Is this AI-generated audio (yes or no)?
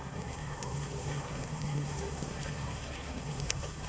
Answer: yes